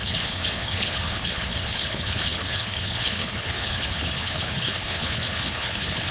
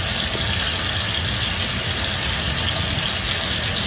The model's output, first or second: first